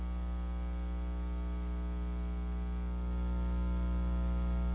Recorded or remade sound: remade